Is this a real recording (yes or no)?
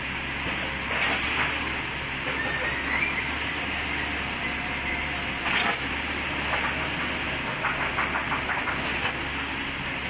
yes